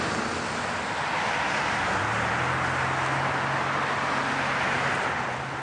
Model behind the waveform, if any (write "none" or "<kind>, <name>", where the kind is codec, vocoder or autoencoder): none